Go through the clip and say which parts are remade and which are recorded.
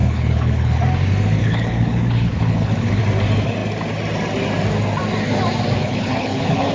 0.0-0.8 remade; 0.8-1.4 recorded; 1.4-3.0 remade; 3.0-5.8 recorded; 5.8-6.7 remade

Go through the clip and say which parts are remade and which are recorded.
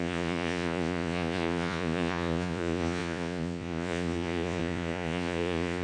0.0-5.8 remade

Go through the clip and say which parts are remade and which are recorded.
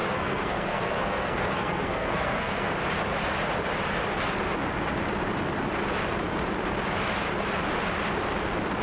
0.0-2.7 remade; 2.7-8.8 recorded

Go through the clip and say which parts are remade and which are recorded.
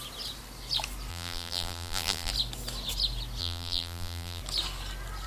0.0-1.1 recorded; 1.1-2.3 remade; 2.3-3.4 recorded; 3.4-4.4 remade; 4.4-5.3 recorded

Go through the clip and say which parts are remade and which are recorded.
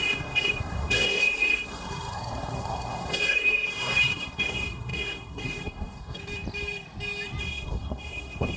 0.0-6.2 remade; 6.2-7.4 recorded; 7.4-8.6 remade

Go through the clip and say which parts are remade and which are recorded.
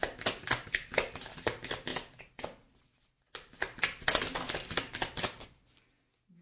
0.0-6.4 recorded